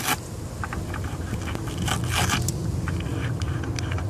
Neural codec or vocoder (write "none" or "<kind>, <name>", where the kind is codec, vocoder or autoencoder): none